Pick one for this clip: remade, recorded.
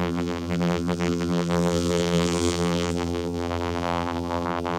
remade